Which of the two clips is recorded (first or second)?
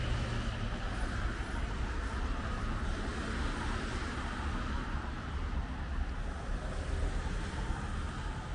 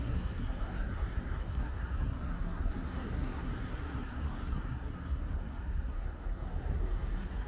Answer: first